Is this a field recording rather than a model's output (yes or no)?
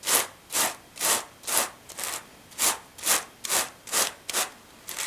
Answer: yes